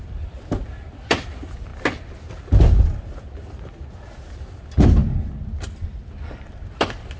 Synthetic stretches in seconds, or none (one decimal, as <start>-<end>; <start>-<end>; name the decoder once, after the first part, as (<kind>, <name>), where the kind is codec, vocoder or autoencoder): none